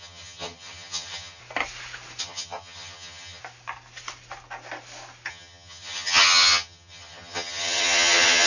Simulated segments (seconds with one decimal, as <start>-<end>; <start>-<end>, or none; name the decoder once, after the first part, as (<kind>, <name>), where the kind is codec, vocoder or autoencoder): 0.0-1.4 (vocoder, HiFi-GAN); 2.2-3.4; 5.3-8.5